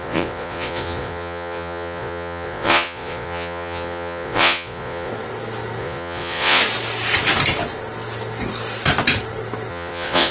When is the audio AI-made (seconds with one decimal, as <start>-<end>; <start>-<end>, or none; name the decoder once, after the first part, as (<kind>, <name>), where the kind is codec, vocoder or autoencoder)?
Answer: 0.0-5.1 (vocoder, Vocos); 5.8-6.6; 9.7-10.3